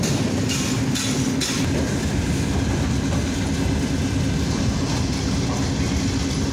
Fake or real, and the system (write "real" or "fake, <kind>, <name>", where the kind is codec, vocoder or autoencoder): real